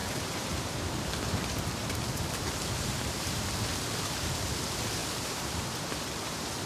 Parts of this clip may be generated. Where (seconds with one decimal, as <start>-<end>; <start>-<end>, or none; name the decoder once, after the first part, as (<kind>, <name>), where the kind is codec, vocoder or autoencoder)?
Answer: 0.0-1.2 (vocoder, BigVGAN v2); 1.8-3.5; 5.0-5.7